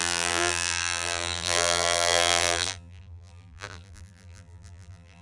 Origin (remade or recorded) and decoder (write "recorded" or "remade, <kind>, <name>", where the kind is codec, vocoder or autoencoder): remade, vocoder, BigVGAN v2